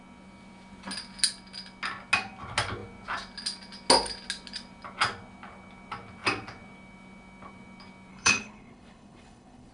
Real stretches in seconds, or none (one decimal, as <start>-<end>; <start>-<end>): 0.0-8.1